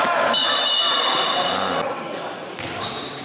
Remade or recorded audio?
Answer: recorded